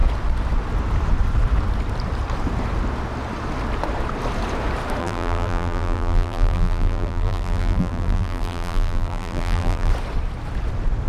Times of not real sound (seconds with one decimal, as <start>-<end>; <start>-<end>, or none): 5.0-9.9